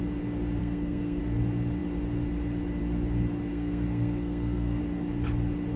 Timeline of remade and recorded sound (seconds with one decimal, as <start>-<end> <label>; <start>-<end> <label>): 0.0-0.6 recorded; 0.6-1.2 remade; 1.2-3.5 recorded; 3.5-4.8 remade; 4.8-5.8 recorded